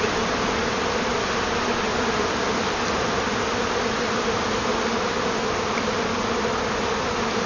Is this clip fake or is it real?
real